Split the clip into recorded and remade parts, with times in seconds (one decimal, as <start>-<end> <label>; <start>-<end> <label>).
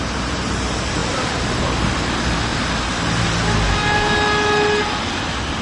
0.0-2.5 remade; 2.5-5.6 recorded